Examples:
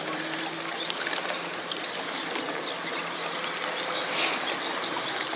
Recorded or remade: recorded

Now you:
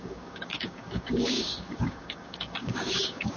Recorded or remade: remade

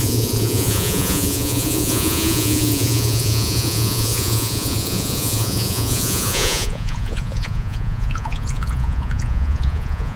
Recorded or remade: remade